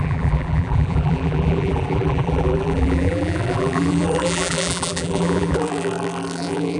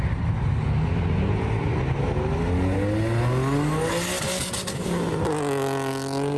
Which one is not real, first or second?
first